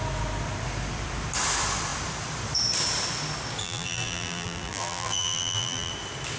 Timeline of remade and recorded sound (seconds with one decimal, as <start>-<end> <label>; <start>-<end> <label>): 0.0-3.6 recorded; 3.6-5.9 remade; 5.9-6.4 recorded